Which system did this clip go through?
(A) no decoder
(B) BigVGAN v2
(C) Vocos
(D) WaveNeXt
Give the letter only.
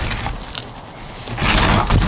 A